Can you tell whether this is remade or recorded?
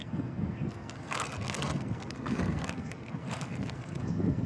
remade